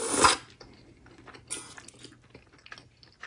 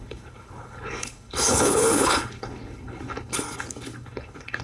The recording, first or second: first